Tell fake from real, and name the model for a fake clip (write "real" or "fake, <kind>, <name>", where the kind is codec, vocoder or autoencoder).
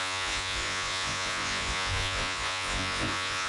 fake, vocoder, Vocos